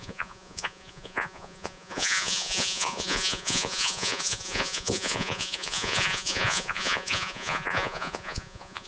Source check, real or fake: fake